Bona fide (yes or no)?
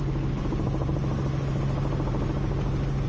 yes